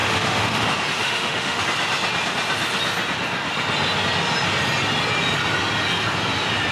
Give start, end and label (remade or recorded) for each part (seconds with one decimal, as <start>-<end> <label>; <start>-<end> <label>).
0.0-0.6 remade; 0.6-1.0 recorded; 1.0-1.6 remade; 1.6-6.7 recorded